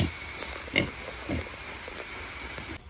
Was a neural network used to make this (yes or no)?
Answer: yes